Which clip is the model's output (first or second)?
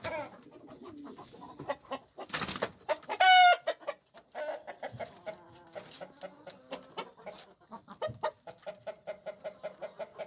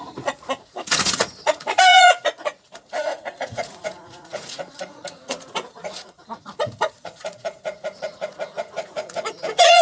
second